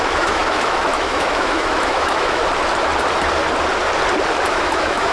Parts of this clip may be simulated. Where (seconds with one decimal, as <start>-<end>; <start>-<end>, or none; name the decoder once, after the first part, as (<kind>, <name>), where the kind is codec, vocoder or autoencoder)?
0.0-2.4 (autoencoder, DAC-VAE); 4.5-5.1

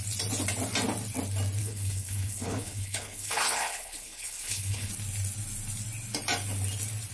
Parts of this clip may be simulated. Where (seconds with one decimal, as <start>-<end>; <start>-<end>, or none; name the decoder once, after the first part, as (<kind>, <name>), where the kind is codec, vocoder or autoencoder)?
1.6-4.9 (codec, HILCodec)

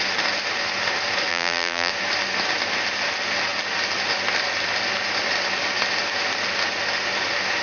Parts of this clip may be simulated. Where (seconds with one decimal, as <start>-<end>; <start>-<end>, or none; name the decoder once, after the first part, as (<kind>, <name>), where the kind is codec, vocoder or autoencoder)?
1.3-1.9 (vocoder, BigVGAN v2)